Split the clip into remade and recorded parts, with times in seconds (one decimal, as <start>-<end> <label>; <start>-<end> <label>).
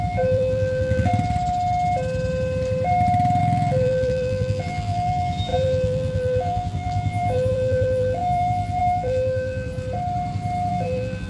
0.0-1.1 remade; 1.1-3.4 recorded; 3.4-9.7 remade; 9.7-10.7 recorded; 10.7-11.3 remade